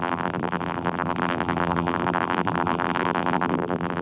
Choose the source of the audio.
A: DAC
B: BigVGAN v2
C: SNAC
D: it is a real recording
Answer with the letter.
B